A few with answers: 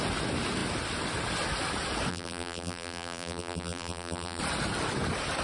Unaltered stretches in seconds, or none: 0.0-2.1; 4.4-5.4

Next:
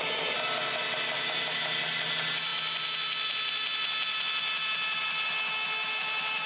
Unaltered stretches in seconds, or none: 0.0-6.5

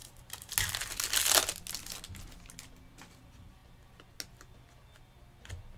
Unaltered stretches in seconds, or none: 0.5-5.8

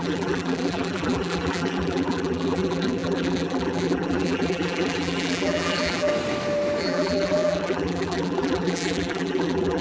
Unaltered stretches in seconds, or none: 6.1-6.8

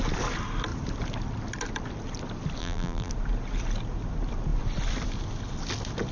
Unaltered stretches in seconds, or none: 0.0-2.6; 3.1-6.1

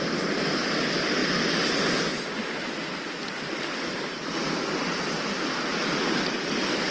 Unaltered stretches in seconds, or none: 0.0-6.9

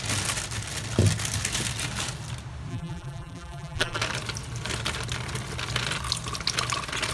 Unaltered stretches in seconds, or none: 0.0-2.7; 4.0-7.1